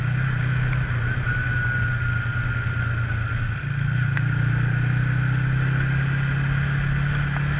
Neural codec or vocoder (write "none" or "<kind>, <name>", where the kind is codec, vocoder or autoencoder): none